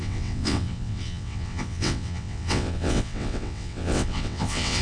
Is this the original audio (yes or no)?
no